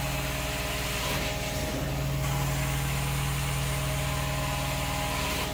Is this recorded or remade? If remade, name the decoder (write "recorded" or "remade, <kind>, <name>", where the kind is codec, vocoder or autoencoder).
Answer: recorded